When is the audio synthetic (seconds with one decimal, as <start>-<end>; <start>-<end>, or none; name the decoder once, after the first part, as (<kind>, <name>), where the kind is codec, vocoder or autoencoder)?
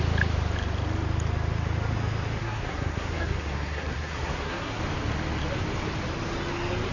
2.4-4.8 (codec, SNAC)